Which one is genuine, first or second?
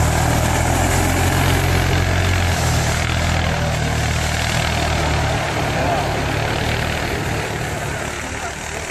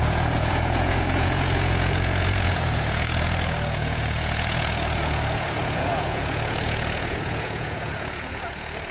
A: first